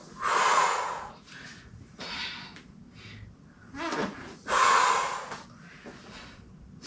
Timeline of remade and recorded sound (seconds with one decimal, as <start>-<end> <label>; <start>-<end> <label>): 0.0-2.2 remade; 2.2-4.0 recorded; 4.0-5.3 remade; 5.3-6.9 recorded